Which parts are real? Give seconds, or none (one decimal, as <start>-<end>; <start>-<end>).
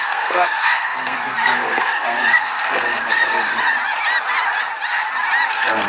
3.5-5.5